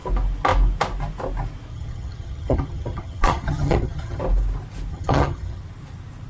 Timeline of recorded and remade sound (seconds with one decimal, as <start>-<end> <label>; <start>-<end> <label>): 0.0-1.7 recorded; 1.7-4.2 remade; 4.2-4.9 recorded; 4.9-5.6 remade; 5.6-6.3 recorded

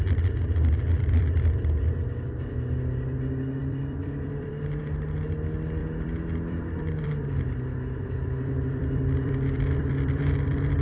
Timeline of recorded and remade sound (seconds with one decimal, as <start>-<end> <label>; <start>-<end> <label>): 0.0-3.6 recorded; 3.6-4.8 remade; 4.8-5.8 recorded; 5.8-10.8 remade

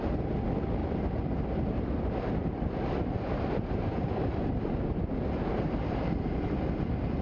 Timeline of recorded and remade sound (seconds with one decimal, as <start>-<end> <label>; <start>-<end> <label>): 0.0-0.8 recorded; 0.8-5.1 remade; 5.1-7.2 recorded

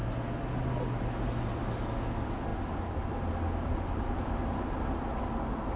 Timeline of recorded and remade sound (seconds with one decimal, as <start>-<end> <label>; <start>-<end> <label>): 0.0-5.8 recorded

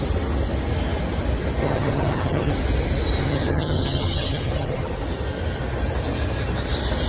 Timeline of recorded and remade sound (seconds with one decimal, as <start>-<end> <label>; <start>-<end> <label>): 0.0-1.6 recorded; 1.6-2.5 remade; 2.5-3.2 recorded; 3.2-4.9 remade; 4.9-7.1 recorded

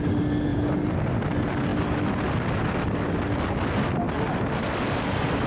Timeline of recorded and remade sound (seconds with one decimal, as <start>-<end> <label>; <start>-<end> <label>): 0.0-0.5 recorded; 0.5-1.1 remade; 1.1-5.5 recorded